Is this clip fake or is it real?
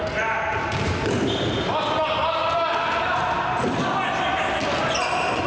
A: real